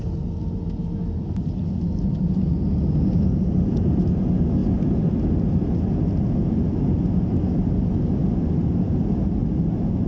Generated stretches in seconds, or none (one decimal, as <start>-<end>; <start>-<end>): none